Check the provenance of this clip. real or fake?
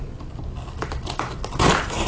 real